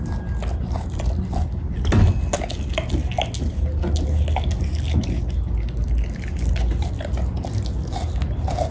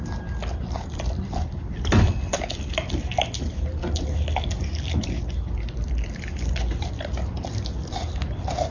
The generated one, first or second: second